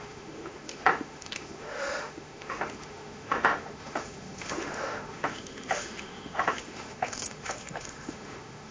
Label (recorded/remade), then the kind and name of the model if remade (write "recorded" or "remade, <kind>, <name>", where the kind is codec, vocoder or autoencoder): remade, autoencoder, DAC-VAE